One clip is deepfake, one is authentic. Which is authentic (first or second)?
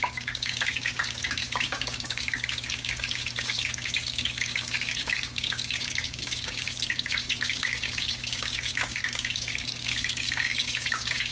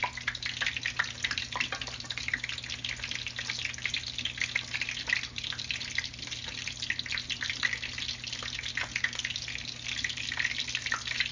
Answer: second